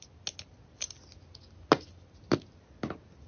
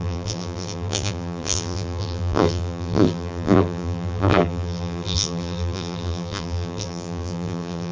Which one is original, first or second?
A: first